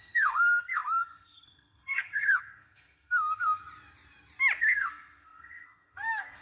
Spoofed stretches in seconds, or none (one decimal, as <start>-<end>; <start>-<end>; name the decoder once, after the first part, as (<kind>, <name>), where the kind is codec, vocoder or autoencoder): 0.0-3.6 (codec, SNAC); 4.6-6.4